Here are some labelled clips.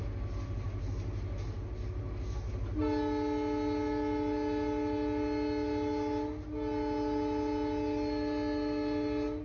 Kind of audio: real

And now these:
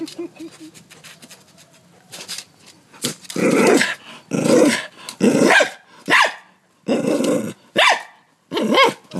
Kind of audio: real